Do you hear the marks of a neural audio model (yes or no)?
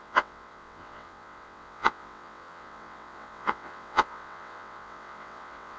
yes